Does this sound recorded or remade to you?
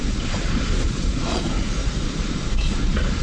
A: remade